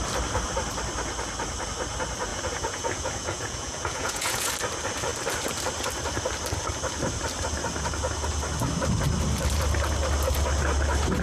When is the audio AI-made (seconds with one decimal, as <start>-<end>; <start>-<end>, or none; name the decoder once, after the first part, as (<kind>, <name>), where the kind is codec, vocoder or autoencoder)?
2.3-4.5 (vocoder, Vocos)

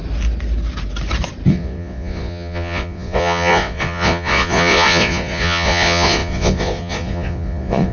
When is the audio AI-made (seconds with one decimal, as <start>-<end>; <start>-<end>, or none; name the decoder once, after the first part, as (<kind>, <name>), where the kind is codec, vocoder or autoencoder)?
1.5-7.9 (vocoder, Vocos)